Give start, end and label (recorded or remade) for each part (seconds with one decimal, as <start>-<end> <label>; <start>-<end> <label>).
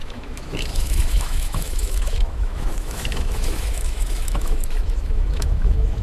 0.0-6.0 remade